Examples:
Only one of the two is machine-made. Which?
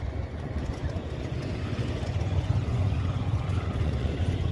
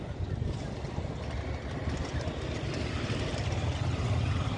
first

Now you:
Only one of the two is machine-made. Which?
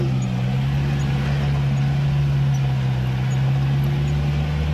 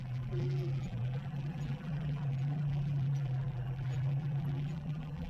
second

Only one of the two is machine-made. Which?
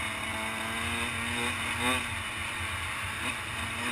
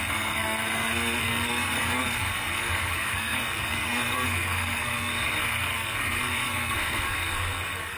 second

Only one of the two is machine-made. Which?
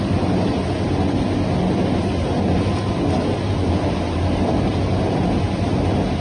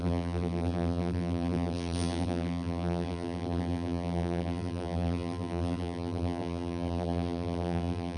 second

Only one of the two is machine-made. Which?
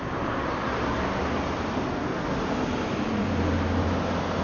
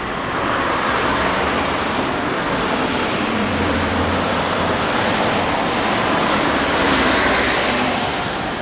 second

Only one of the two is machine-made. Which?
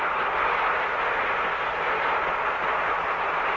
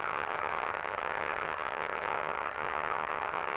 second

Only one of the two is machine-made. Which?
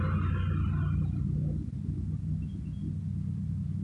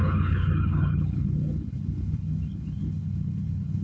second